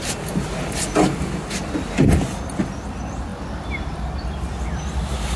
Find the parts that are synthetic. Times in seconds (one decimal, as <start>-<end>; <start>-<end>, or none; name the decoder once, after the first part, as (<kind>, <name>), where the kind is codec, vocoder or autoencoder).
none